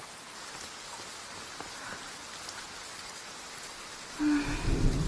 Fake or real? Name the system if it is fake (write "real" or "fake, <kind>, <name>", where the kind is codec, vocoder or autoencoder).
real